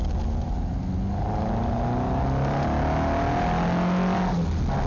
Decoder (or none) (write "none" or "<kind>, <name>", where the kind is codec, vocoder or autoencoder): none